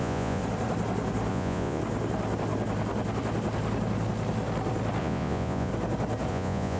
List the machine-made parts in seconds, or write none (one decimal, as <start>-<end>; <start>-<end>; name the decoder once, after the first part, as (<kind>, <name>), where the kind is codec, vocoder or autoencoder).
0.0-0.4 (vocoder, Vocos); 1.3-1.8; 5.0-5.7; 6.3-6.8